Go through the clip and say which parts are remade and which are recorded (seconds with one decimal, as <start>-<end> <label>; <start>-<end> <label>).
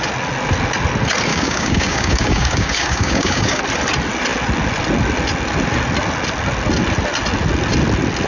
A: 0.0-1.3 recorded; 1.3-3.6 remade; 3.6-8.3 recorded